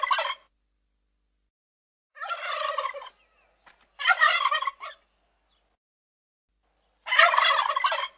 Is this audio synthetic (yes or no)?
no